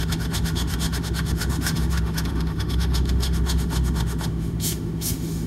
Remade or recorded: remade